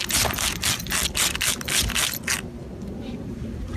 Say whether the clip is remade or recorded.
recorded